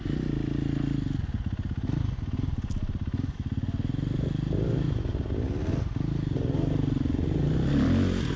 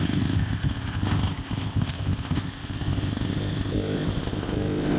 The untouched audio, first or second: first